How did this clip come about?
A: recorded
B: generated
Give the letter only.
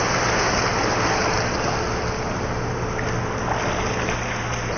A